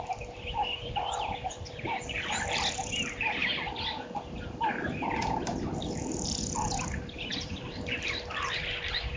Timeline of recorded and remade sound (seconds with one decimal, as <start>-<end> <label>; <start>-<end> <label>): 0.0-3.4 remade; 3.4-4.7 recorded; 4.7-9.2 remade